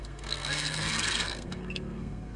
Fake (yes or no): yes